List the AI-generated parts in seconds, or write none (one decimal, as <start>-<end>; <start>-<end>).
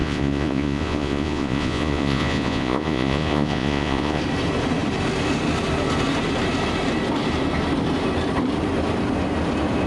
0.0-4.2